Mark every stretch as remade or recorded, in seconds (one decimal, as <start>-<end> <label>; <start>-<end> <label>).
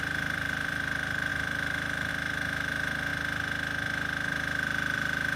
0.0-3.1 remade; 3.1-5.4 recorded